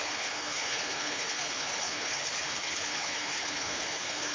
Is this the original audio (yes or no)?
no